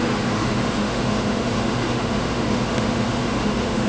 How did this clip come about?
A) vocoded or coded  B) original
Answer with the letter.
A